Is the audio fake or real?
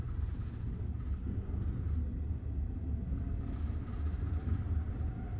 real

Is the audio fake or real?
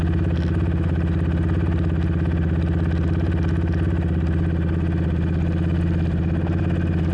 real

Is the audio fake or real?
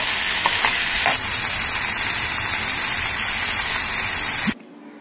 real